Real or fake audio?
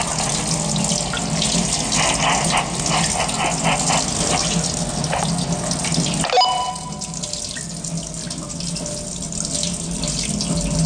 real